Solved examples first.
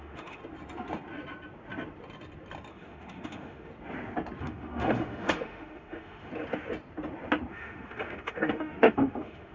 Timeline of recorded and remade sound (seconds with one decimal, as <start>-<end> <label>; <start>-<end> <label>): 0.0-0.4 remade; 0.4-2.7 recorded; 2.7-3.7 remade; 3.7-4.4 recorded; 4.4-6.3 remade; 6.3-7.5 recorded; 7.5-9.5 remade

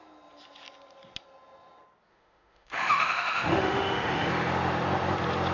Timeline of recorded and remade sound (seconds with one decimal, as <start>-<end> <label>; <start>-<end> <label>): 0.0-2.1 recorded; 2.1-4.3 remade; 4.3-5.5 recorded

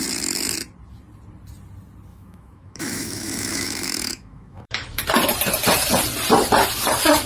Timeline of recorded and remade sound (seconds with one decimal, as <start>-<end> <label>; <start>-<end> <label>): 0.0-2.1 recorded; 2.1-5.0 remade; 5.0-7.3 recorded